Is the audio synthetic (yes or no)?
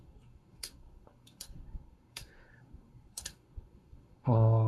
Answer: yes